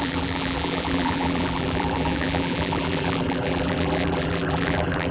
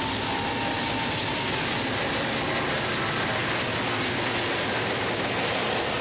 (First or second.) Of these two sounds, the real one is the second